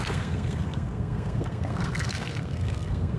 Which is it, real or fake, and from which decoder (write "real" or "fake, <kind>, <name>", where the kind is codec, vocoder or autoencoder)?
fake, codec, SNAC